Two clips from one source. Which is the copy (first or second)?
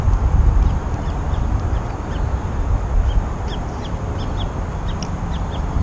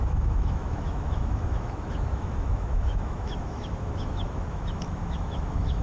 second